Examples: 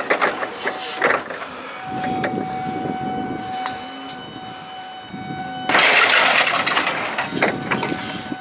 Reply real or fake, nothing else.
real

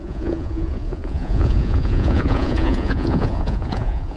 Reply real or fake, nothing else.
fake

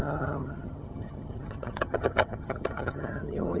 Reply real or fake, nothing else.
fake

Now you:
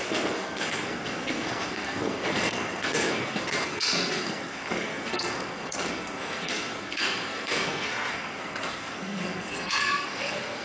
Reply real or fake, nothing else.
fake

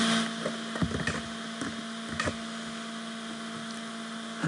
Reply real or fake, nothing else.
real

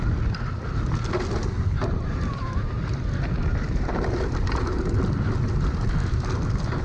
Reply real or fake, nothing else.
real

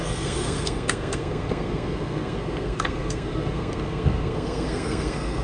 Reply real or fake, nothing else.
fake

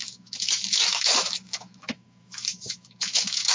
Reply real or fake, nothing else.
fake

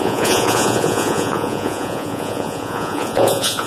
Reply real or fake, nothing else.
fake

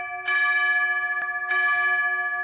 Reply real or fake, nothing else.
real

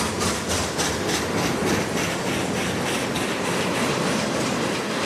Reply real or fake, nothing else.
real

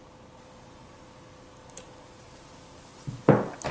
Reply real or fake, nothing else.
real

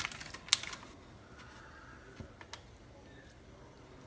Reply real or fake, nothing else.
real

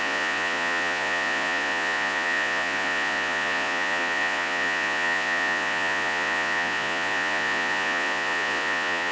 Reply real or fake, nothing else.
fake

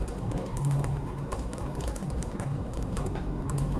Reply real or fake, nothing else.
fake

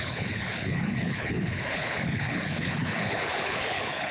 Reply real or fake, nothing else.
fake